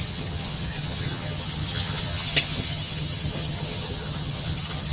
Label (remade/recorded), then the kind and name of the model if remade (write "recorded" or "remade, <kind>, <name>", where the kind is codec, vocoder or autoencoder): remade, vocoder, HiFi-GAN